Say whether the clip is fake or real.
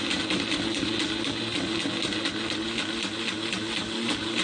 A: real